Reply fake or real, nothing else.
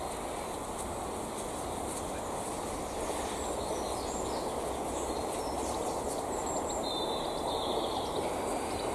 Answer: real